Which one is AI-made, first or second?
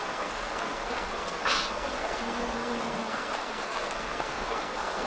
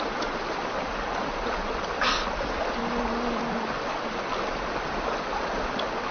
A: first